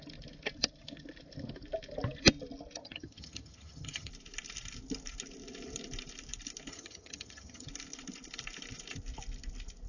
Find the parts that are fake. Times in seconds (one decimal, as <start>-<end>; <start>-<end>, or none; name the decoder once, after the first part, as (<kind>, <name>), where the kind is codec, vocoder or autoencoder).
2.8-4.1 (vocoder, HiFi-GAN); 6.7-7.7